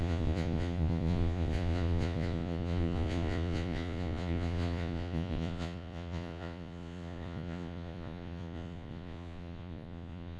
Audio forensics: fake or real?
fake